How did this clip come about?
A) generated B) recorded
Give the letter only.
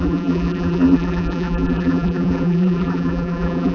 A